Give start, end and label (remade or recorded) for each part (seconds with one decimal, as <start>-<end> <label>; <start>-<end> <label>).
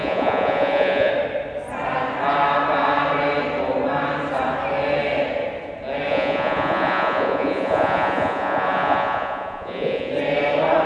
0.0-1.1 remade; 1.1-6.1 recorded; 6.1-10.1 remade; 10.1-10.9 recorded